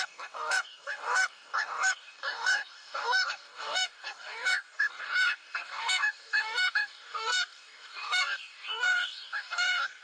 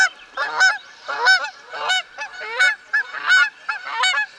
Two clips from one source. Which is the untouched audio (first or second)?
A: second